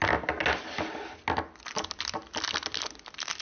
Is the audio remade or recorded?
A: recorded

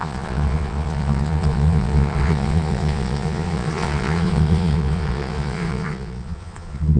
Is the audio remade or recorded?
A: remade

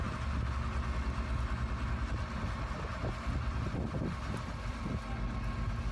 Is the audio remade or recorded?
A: recorded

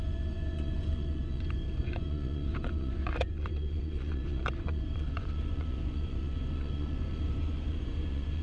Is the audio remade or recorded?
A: remade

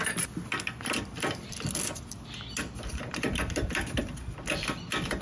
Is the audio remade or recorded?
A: recorded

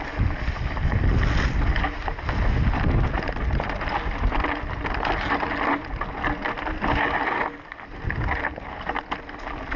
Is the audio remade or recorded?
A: recorded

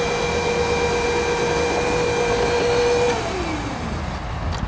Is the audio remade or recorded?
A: recorded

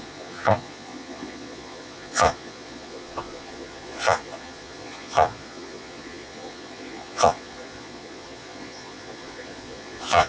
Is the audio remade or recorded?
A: remade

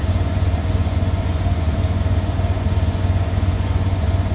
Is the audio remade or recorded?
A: remade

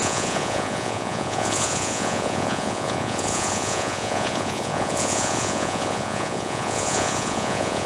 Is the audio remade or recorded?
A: remade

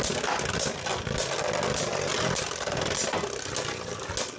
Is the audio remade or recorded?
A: recorded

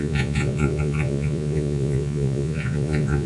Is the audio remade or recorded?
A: remade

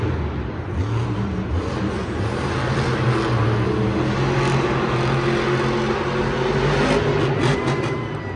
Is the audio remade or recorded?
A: recorded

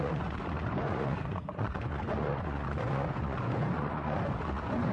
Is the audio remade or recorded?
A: remade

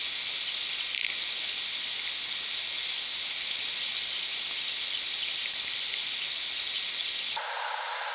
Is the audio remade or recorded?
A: recorded